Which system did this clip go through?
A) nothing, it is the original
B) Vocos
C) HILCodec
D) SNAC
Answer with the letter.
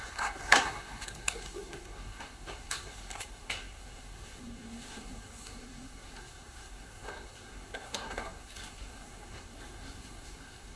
D